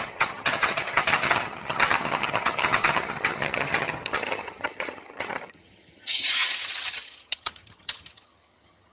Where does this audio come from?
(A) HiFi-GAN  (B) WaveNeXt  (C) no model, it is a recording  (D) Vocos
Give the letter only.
A